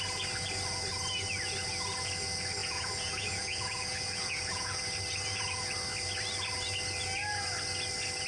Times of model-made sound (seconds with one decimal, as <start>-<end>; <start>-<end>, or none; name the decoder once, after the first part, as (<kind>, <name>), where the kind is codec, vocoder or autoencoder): 2.6-4.8 (vocoder, Vocos)